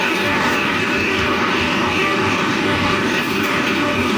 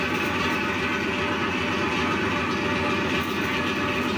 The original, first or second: second